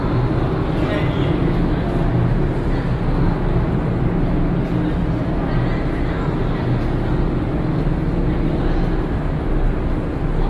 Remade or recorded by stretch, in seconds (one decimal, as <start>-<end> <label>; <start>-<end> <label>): 0.0-10.5 recorded